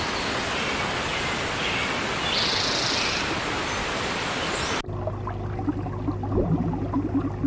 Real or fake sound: real